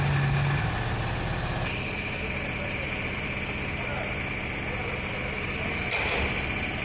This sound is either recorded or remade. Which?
recorded